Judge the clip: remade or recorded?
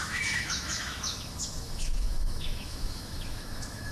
remade